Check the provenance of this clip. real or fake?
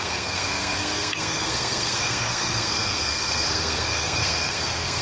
fake